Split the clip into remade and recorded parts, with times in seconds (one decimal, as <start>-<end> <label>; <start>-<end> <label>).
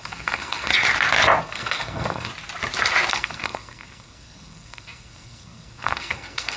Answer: 0.0-0.7 remade; 0.7-1.4 recorded; 1.4-2.3 remade; 2.3-3.1 recorded; 3.1-6.6 remade